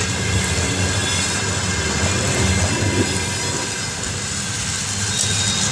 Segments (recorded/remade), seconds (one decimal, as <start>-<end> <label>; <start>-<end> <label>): 0.0-5.7 recorded